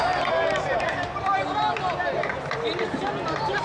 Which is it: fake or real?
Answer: real